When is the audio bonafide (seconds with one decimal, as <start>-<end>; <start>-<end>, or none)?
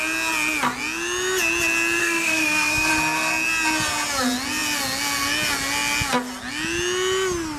0.0-2.0; 2.9-7.6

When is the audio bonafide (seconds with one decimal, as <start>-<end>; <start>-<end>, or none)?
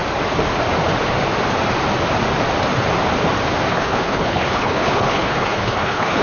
0.0-3.7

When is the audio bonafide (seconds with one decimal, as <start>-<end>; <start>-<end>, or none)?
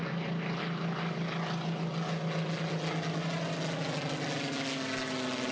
0.0-5.5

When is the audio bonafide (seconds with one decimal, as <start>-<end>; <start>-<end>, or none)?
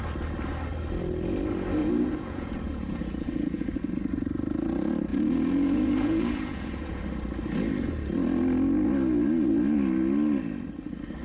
0.0-1.8; 3.9-5.1; 7.0-11.2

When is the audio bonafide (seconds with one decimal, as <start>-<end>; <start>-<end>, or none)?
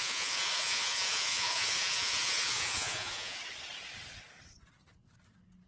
3.4-5.7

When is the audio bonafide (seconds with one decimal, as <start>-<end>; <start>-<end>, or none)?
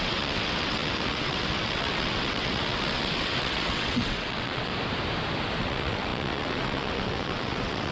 4.7-5.6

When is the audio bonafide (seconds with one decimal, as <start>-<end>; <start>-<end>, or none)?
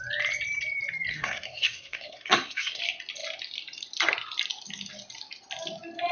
0.0-1.1; 2.8-6.1